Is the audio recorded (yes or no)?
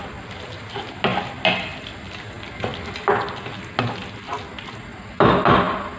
yes